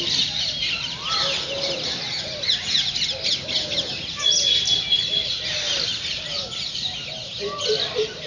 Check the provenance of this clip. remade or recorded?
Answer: recorded